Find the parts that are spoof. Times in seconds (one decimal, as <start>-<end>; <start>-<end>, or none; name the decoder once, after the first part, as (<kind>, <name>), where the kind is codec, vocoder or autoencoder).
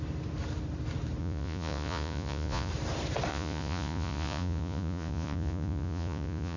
1.2-2.7 (vocoder, Vocos); 3.3-6.6